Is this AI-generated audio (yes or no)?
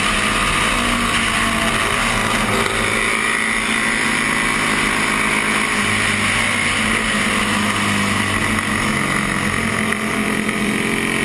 no